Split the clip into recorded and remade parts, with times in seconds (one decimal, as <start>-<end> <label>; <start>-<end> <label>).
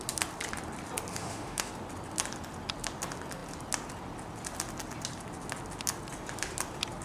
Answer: 0.0-1.1 recorded; 1.1-1.7 remade; 1.7-7.0 recorded